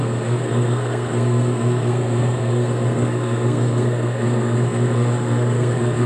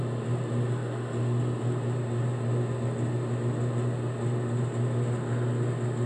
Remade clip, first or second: first